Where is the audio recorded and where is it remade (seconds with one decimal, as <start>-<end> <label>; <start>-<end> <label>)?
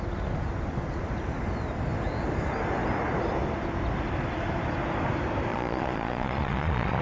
0.0-5.5 recorded; 5.5-7.0 remade